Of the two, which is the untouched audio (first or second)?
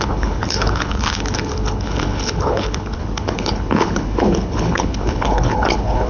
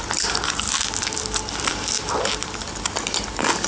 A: second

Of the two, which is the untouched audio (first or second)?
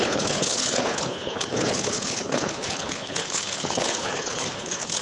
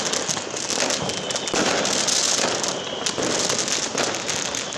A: second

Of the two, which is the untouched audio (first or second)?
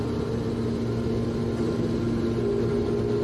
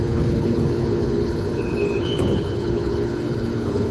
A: first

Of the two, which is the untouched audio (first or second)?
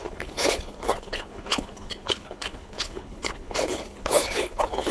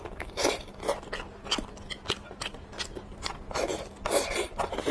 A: second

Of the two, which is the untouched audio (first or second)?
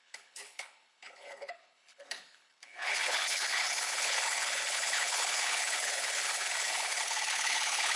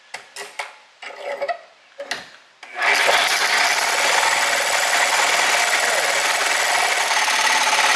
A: second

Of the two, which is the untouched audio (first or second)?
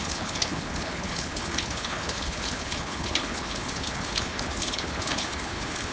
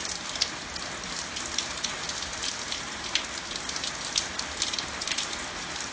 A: second